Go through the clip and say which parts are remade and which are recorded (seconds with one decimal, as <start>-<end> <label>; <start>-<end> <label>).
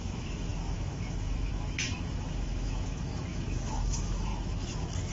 0.0-5.1 remade